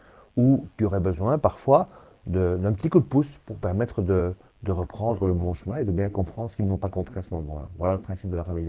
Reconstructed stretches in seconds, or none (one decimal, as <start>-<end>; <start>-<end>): 5.1-8.7